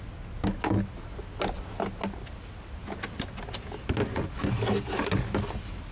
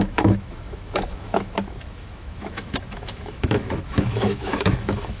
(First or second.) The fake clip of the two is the second